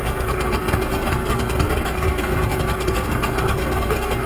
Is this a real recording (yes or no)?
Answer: no